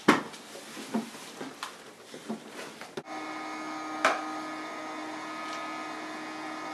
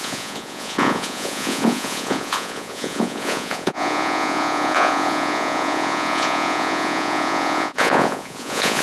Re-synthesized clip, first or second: second